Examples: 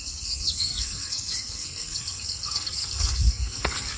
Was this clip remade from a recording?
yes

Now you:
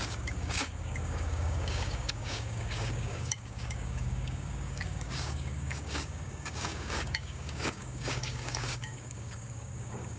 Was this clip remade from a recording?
yes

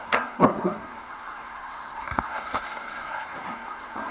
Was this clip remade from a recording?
yes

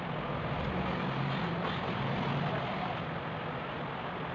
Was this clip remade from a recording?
no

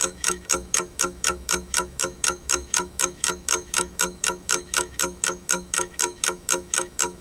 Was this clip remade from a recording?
yes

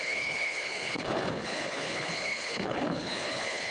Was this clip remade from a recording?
yes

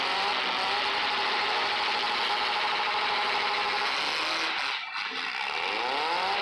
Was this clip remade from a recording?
no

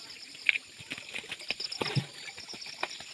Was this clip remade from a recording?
no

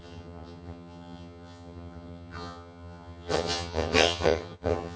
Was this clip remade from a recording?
yes